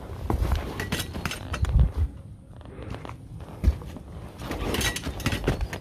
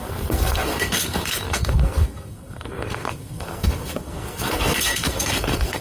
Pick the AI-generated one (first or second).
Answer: second